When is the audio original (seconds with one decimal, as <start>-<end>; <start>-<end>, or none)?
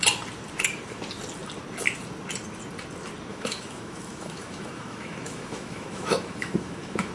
0.0-3.3